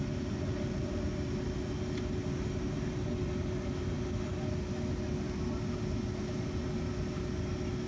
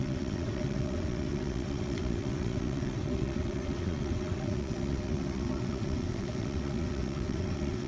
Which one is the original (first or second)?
first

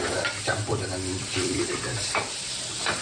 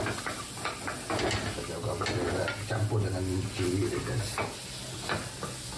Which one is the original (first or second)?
second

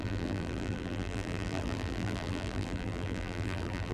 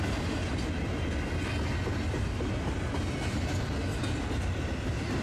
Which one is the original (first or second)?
second